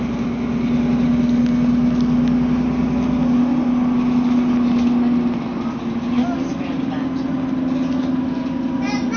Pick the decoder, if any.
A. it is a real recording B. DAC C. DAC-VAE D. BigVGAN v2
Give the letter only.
A